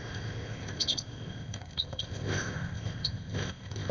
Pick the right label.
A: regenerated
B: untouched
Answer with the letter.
A